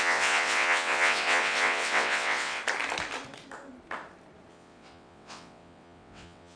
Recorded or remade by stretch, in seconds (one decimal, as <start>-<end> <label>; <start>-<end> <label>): 0.0-2.6 remade; 2.6-4.5 recorded; 4.5-6.6 remade